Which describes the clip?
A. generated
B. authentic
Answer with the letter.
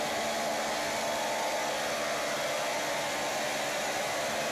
B